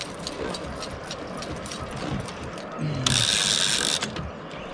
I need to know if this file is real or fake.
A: real